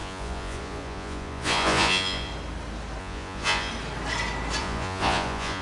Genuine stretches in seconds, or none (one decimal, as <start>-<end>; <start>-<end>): 2.3-3.0; 3.7-4.6